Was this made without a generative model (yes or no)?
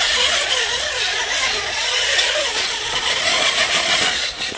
no